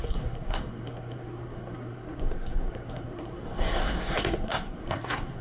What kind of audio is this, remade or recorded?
remade